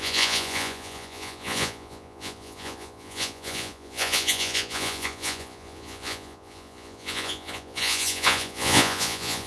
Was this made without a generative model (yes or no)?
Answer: no